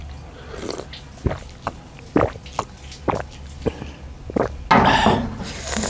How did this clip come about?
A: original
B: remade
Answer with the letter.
A